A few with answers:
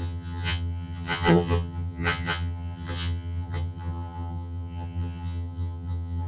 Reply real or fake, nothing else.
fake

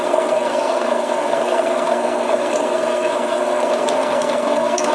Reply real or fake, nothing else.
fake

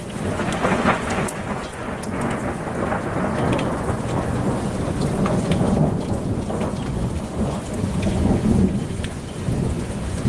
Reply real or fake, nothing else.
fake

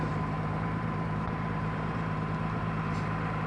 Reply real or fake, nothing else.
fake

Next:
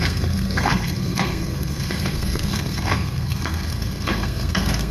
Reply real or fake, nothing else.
fake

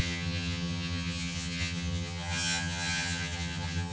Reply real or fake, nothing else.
fake